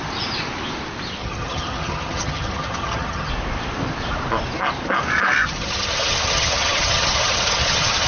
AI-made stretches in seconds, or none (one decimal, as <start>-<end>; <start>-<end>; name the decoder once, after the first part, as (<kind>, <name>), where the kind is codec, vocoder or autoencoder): 1.2-3.3 (vocoder, HiFi-GAN); 5.4-8.1